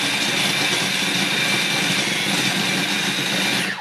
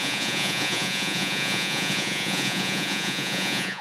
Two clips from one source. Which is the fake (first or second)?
second